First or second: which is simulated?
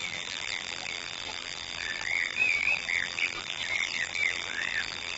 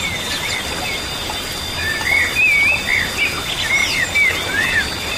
first